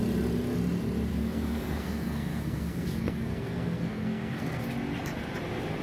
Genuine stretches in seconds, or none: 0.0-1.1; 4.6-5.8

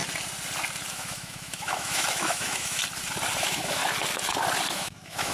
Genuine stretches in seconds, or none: 0.0-0.9; 2.8-3.4; 3.8-4.7

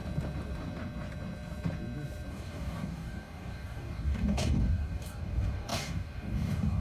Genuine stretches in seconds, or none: 0.0-2.3